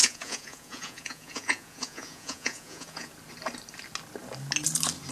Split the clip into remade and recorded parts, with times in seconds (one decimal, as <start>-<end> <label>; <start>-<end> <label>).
0.0-3.1 remade; 3.1-5.1 recorded